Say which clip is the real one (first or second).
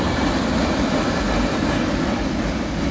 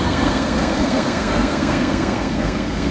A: first